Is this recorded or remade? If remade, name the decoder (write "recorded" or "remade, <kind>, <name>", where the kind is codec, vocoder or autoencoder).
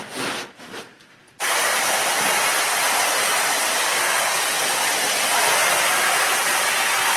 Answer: recorded